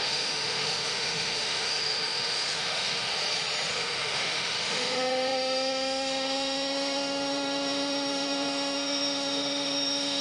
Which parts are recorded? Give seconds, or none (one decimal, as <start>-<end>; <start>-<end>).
3.1-3.7